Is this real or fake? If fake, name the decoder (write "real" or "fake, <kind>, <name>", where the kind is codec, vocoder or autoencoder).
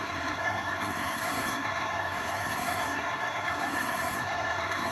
fake, codec, SNAC